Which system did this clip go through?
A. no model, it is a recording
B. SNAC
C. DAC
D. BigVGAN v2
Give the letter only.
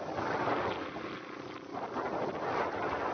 A